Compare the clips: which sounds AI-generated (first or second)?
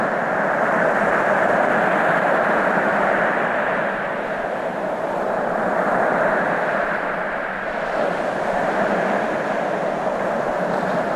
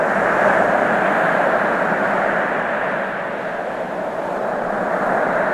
first